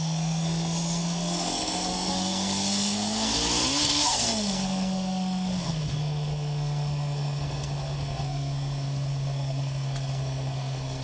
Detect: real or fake fake